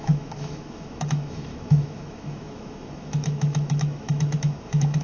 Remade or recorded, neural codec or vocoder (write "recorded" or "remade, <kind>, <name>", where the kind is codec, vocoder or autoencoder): remade, autoencoder, DAC-VAE